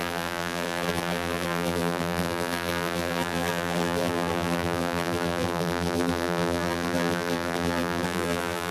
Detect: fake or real fake